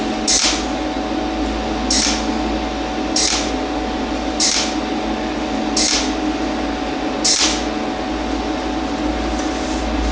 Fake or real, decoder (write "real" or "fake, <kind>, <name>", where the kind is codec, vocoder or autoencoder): real